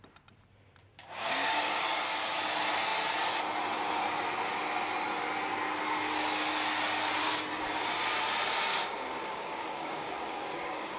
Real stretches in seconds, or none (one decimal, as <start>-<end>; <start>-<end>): 0.0-0.9; 2.0-8.7